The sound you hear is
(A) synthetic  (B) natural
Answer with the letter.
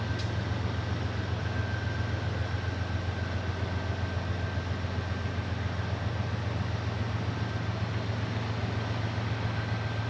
B